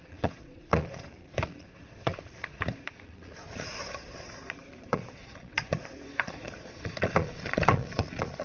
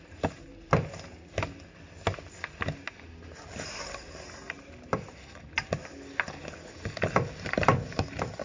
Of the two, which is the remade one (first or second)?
first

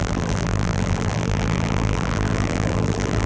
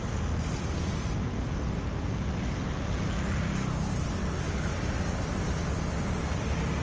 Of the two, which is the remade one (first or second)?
first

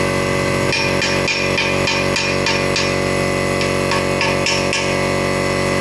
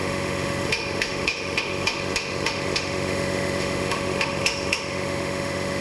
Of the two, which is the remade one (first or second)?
second